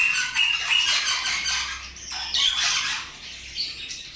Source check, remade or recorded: recorded